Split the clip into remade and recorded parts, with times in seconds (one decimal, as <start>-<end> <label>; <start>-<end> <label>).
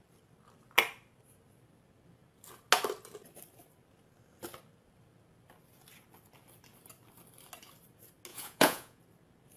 0.0-8.3 recorded; 8.3-9.0 remade; 9.0-9.6 recorded